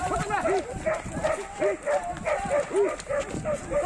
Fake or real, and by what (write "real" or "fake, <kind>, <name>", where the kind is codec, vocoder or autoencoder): real